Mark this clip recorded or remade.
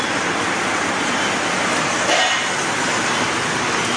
recorded